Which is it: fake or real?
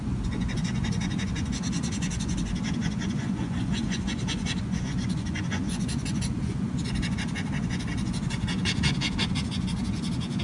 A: fake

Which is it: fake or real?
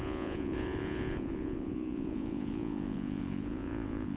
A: fake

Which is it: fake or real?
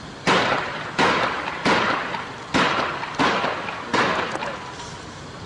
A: real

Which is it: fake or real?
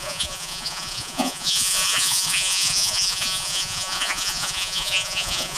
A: fake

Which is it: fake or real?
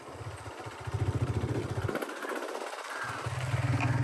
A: real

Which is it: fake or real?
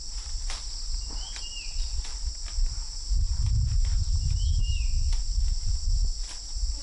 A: real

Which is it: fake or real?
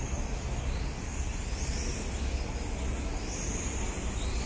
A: real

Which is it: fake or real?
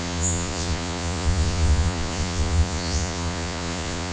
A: fake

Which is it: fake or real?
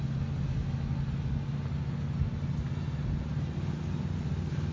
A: real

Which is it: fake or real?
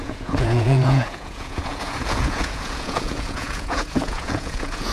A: fake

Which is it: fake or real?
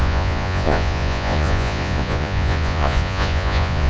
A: fake